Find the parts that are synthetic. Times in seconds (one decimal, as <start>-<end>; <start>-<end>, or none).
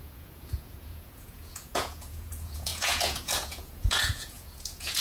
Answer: 0.0-5.0